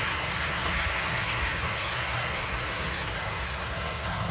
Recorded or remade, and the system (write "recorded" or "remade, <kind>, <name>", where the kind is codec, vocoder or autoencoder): remade, codec, SNAC